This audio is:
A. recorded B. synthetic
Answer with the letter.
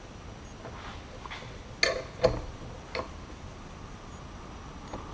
A